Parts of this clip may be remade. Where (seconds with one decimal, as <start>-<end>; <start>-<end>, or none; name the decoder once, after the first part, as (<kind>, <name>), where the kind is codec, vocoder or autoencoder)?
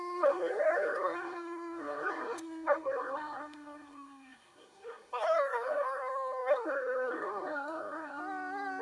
0.0-8.2 (codec, SNAC)